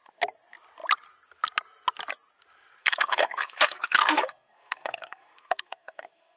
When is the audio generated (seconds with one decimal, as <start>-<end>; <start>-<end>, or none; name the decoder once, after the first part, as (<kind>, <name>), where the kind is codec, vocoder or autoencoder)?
2.8-6.4 (codec, SNAC)